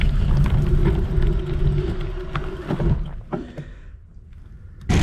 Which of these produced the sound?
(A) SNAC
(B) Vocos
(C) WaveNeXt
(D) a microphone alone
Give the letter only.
D